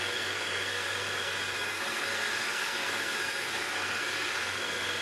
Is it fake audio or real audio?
fake